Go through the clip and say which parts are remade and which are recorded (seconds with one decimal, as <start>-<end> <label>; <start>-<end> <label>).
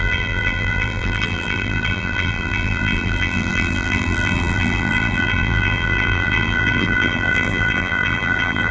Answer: 0.0-8.7 remade